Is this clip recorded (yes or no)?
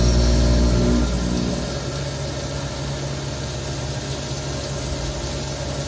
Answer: yes